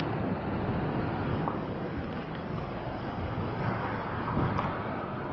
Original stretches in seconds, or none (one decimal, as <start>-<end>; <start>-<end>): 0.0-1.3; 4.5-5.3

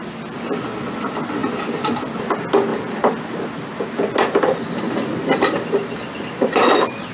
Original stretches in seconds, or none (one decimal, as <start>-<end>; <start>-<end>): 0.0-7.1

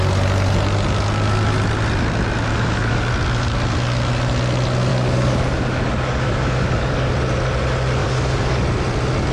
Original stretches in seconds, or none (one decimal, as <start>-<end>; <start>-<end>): 0.0-2.5; 3.1-4.9; 7.1-8.0; 8.6-9.3

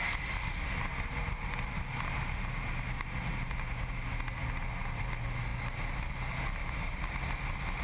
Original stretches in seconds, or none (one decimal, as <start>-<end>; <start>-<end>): 0.0-7.8